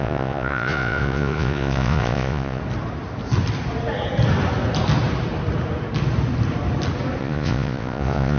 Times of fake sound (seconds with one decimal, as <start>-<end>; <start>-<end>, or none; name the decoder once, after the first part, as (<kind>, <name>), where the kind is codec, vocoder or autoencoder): 0.0-2.6 (vocoder, Vocos); 7.2-8.4